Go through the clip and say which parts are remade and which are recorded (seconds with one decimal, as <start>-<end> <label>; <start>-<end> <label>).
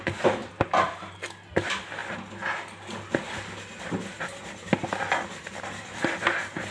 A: 0.0-0.4 recorded; 0.4-1.2 remade; 1.2-6.7 recorded